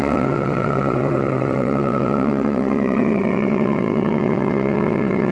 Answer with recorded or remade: remade